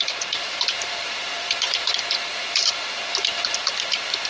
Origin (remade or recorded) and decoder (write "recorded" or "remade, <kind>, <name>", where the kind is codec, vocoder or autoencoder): remade, vocoder, BigVGAN v2